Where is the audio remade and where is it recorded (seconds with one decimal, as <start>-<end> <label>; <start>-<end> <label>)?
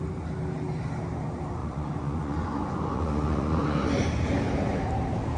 0.0-1.6 recorded; 1.6-4.0 remade; 4.0-5.4 recorded